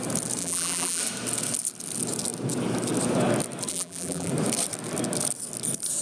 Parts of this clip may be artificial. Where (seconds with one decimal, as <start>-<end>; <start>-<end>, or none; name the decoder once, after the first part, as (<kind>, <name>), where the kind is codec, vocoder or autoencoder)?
0.4-1.0 (vocoder, BigVGAN v2); 3.7-4.3